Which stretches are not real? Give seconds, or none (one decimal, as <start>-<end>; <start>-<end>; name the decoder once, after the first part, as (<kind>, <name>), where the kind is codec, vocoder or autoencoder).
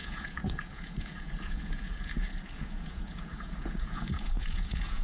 0.0-5.0 (vocoder, Vocos)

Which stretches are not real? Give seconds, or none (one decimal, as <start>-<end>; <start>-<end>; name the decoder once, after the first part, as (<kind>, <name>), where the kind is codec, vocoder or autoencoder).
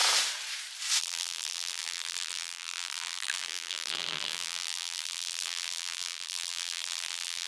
1.0-7.5 (vocoder, BigVGAN v2)